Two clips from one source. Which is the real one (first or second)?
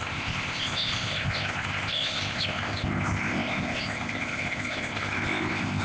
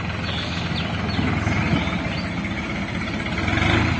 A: second